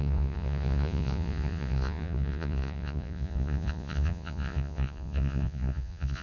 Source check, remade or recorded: remade